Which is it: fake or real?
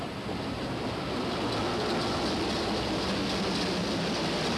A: real